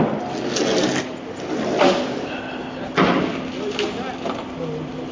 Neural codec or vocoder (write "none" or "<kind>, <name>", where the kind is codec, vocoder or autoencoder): none